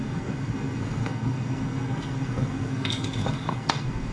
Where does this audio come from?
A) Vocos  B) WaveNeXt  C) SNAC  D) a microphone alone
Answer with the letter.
C